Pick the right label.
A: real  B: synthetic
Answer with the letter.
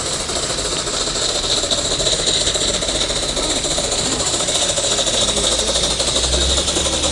A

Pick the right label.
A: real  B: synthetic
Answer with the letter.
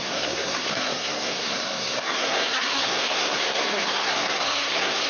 B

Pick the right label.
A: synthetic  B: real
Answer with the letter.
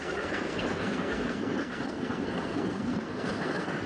A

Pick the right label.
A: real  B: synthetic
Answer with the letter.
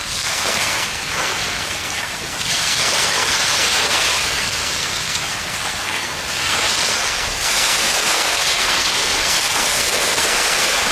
B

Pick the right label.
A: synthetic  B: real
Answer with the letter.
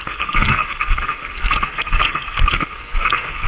A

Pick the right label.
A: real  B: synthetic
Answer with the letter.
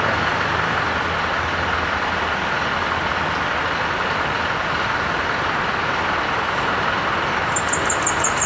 A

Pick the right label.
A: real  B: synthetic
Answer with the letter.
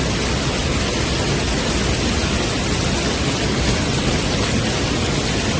A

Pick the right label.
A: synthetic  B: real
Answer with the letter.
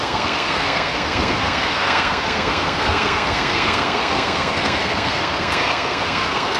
A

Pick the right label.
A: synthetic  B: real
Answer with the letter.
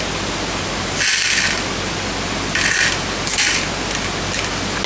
B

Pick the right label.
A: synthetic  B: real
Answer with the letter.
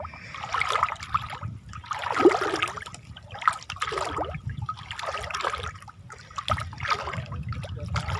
B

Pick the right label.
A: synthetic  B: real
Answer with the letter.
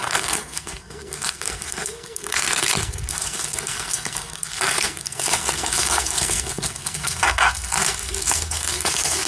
A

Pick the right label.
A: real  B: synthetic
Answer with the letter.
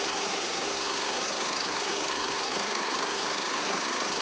B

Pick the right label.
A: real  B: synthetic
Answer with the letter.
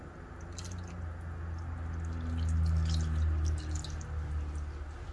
A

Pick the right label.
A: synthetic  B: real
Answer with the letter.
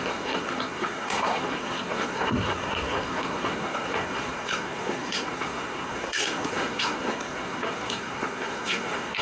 A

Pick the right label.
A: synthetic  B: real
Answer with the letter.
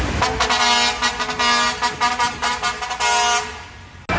B